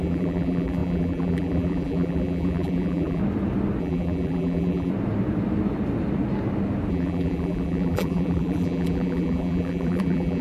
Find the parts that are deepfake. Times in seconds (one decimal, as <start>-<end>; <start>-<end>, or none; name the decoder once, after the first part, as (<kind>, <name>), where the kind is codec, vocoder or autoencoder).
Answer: 0.0-3.2 (vocoder, BigVGAN v2); 3.8-4.9; 6.9-10.4